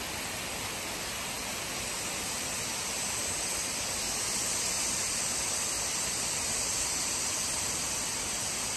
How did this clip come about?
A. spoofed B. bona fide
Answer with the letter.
B